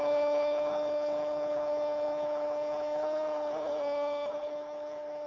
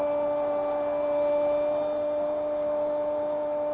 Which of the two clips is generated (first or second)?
first